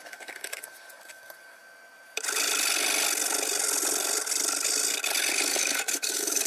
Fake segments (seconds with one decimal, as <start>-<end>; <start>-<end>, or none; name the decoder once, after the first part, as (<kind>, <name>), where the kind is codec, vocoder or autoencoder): 0.0-1.6 (codec, DAC); 5.3-6.5